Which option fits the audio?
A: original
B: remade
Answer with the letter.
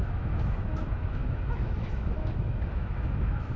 B